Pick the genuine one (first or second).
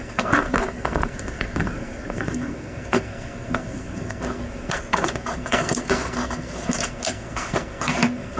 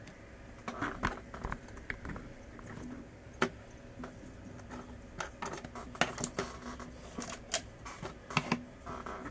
second